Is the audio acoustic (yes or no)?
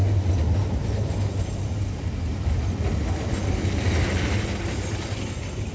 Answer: yes